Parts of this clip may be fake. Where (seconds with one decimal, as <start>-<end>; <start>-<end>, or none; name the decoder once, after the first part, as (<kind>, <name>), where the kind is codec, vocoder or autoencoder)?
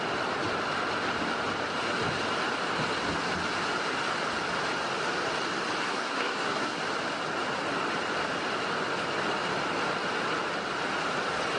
5.8-6.8 (codec, SNAC)